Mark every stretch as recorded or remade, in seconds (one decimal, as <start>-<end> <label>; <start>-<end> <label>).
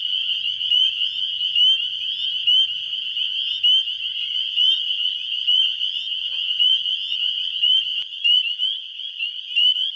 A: 0.0-1.6 remade; 1.6-4.3 recorded; 4.3-10.0 remade